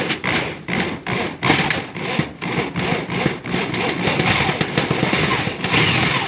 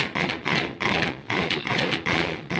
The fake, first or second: second